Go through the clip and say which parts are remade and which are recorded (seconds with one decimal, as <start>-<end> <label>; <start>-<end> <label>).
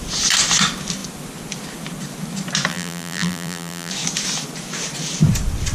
0.0-2.7 recorded; 2.7-3.9 remade; 3.9-5.7 recorded